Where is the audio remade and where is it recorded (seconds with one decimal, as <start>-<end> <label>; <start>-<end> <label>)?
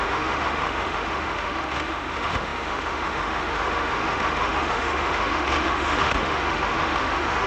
0.0-7.5 remade